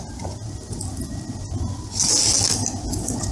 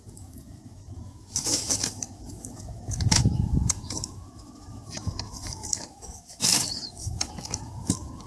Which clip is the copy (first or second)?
second